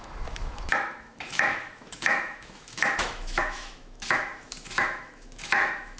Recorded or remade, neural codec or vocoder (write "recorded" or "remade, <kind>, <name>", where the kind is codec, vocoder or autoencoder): remade, autoencoder, DAC-VAE